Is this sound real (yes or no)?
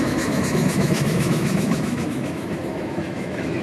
no